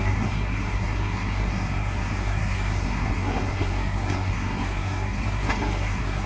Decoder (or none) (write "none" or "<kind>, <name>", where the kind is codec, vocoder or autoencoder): codec, SNAC